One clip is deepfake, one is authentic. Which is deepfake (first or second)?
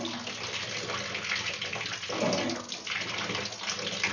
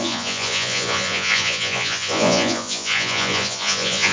second